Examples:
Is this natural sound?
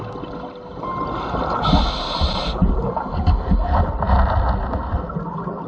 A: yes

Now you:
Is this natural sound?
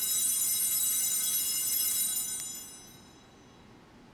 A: yes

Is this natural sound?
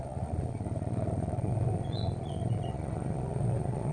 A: no